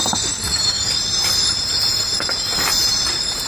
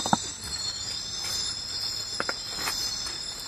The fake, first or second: first